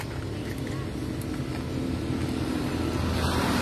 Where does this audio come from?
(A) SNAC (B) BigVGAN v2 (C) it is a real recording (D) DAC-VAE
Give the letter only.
C